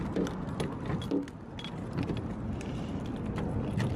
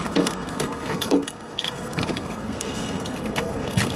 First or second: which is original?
first